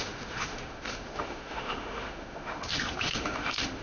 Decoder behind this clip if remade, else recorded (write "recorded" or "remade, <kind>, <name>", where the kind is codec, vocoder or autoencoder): remade, autoencoder, DAC-VAE